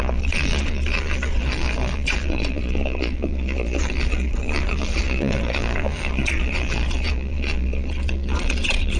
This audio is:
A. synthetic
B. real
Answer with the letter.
A